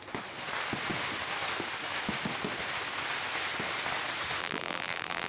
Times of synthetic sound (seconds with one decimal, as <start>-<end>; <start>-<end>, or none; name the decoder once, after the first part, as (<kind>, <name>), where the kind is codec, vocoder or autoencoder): 4.4-5.3 (vocoder, BigVGAN v2)